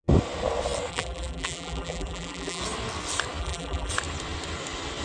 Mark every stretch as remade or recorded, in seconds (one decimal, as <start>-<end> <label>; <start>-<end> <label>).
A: 0.0-0.9 recorded; 0.9-2.6 remade; 2.6-3.4 recorded; 3.4-3.9 remade; 3.9-5.0 recorded